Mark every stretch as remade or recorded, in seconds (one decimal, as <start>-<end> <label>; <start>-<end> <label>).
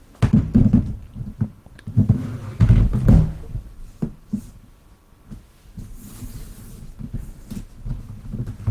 0.0-8.7 recorded